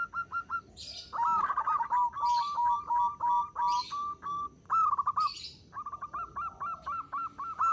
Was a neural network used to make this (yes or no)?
no